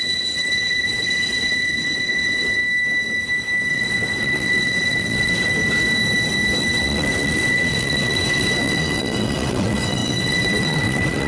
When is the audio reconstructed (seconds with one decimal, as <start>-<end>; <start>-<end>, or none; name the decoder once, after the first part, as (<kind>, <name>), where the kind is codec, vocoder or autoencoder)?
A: 0.0-2.6 (vocoder, WaveNeXt); 3.7-5.6; 6.6-11.3